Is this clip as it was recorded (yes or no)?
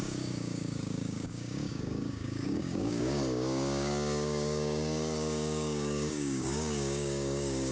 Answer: no